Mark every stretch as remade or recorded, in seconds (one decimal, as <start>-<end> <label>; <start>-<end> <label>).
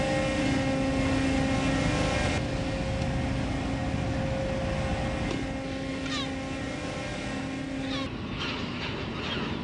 0.0-9.6 recorded